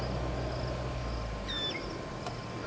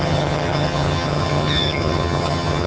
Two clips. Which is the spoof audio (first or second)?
second